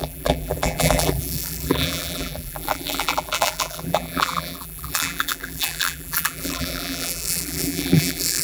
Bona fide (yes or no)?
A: no